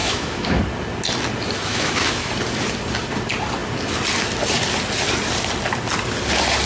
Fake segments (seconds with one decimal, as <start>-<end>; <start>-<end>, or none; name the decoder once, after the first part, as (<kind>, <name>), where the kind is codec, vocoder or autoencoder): 0.0-0.6 (autoencoder, DAC-VAE); 1.7-2.3